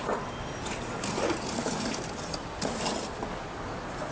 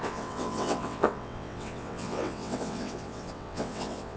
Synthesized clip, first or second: second